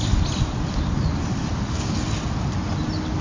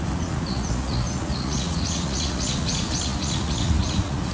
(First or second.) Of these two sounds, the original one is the first